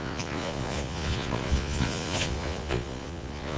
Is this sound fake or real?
fake